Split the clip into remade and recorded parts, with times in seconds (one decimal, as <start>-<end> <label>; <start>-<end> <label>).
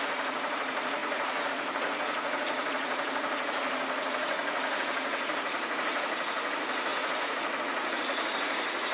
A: 0.0-8.9 remade